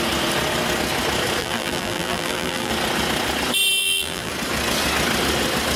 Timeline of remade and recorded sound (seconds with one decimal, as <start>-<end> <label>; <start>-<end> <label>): 0.0-1.4 recorded; 1.4-2.7 remade; 2.7-3.8 recorded; 3.8-4.3 remade; 4.3-5.8 recorded